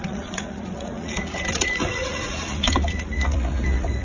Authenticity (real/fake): fake